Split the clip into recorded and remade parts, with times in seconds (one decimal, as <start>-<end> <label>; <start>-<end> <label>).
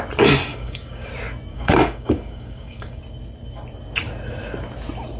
0.0-0.5 recorded; 0.5-1.1 remade; 1.1-1.5 recorded; 1.5-3.0 remade; 3.0-5.2 recorded